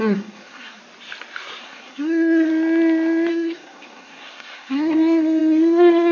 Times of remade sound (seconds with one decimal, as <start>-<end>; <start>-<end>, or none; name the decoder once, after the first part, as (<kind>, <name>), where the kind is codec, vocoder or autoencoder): 0.0-0.8 (codec, SNAC); 1.6-2.5; 3.3-6.1